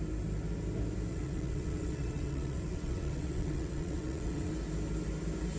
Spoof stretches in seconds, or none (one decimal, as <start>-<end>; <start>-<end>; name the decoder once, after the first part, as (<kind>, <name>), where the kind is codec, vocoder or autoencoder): 1.1-4.5 (vocoder, WaveNeXt)